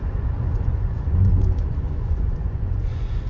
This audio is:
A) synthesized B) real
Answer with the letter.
A